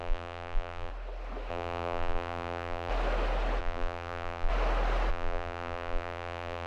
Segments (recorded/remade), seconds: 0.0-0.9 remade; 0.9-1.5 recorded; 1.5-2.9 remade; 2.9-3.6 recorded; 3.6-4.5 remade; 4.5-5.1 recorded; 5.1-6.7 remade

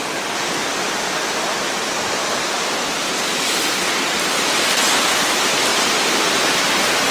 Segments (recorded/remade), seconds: 0.0-5.7 recorded; 5.7-7.1 remade